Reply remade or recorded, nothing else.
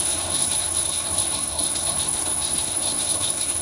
remade